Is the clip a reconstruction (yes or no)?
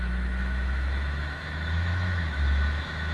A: yes